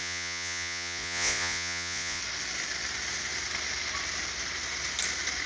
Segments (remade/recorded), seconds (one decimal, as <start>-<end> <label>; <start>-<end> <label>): 0.0-2.2 remade; 2.2-5.5 recorded

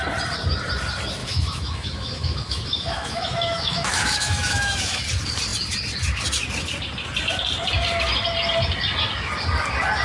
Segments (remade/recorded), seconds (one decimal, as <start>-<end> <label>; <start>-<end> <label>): 0.0-1.2 recorded; 1.2-5.0 remade; 5.0-10.0 recorded

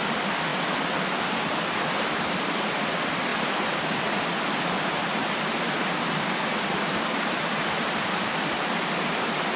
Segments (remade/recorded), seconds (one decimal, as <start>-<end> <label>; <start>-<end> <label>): 0.0-0.5 remade; 0.5-2.0 recorded; 2.0-3.3 remade; 3.3-8.1 recorded; 8.1-9.6 remade

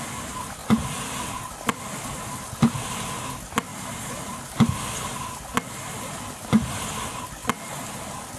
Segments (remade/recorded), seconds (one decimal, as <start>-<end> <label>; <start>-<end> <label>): 0.0-8.4 recorded

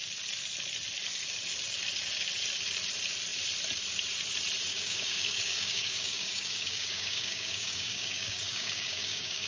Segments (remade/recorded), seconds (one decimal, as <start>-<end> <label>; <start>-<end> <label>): 0.0-4.7 recorded; 4.7-9.5 remade

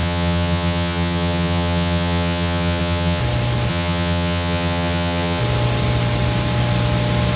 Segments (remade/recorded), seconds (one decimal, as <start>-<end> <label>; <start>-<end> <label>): 0.0-3.2 remade; 3.2-3.7 recorded; 3.7-5.4 remade; 5.4-7.4 recorded